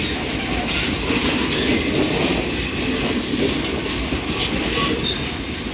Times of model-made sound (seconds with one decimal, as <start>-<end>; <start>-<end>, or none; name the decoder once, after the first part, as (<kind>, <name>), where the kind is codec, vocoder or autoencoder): none